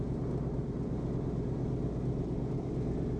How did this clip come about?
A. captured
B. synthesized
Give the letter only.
A